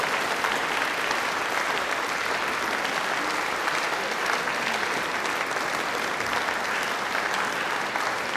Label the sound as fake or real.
real